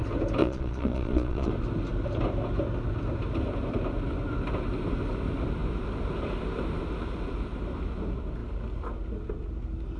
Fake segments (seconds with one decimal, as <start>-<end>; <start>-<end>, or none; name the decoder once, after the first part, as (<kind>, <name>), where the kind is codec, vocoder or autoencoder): 0.4-1.5 (vocoder, Vocos)